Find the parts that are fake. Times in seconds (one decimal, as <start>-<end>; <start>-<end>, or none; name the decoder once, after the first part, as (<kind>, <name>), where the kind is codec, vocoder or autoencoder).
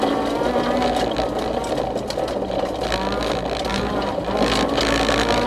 3.7-4.2 (vocoder, BigVGAN v2)